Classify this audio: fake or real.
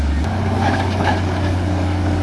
fake